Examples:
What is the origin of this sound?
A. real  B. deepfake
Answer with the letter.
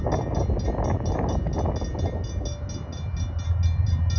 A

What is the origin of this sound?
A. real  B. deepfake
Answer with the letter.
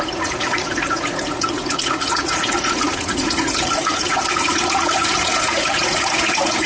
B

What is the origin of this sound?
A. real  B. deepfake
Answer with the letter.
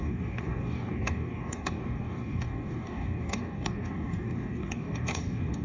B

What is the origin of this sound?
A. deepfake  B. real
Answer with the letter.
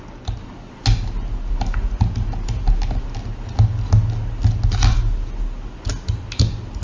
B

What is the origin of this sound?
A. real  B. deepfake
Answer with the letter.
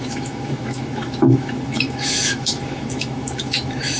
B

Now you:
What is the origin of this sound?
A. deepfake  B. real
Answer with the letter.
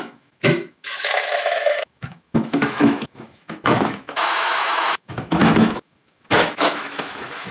A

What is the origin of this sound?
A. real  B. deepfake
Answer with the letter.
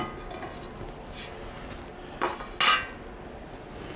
A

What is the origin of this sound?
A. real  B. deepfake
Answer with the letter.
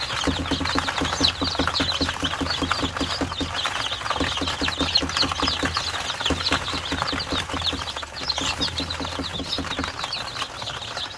A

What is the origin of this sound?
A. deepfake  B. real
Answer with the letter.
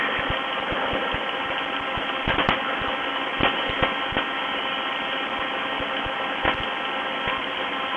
B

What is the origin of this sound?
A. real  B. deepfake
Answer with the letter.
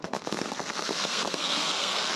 B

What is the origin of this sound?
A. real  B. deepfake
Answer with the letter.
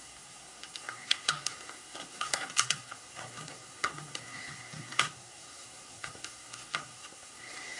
B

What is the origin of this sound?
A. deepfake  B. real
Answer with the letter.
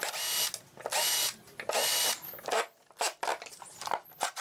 B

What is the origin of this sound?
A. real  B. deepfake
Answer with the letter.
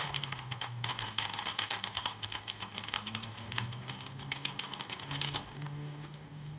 B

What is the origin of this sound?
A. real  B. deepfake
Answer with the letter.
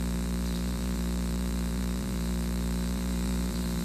B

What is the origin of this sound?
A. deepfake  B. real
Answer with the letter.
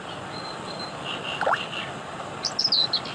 B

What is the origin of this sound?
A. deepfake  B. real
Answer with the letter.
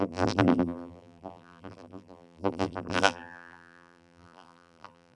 A